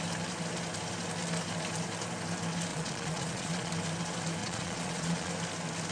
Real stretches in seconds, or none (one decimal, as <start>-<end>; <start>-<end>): 0.0-2.7; 3.7-4.4; 5.3-5.9